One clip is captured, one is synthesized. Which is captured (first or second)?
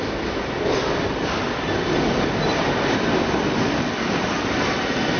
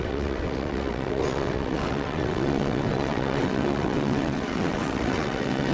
first